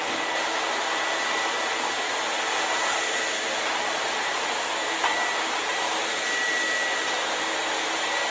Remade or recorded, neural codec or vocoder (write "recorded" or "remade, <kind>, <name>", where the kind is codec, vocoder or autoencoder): recorded